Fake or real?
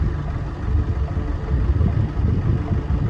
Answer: real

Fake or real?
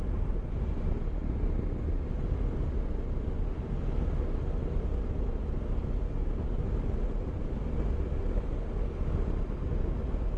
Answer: real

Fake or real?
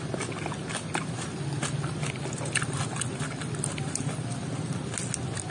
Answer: real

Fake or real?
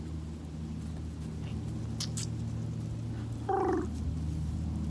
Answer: real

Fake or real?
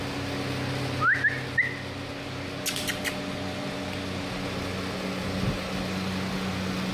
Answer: real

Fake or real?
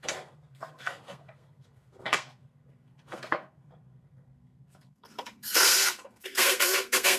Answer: fake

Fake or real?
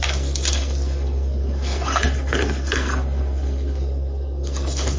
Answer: fake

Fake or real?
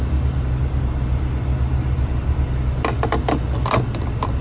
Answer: real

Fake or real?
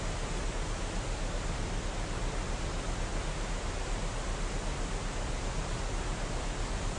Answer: real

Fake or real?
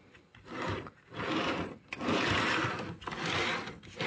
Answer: real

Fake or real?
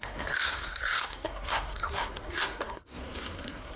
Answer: fake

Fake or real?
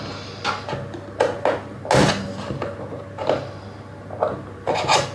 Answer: real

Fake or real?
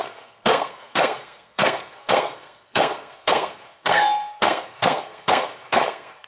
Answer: fake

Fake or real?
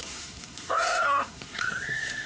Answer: fake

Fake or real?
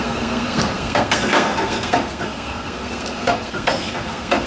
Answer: fake